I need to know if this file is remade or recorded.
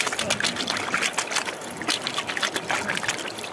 recorded